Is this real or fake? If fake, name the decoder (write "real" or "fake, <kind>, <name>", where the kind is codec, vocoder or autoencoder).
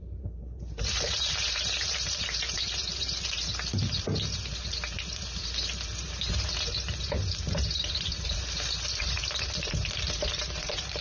fake, vocoder, BigVGAN v2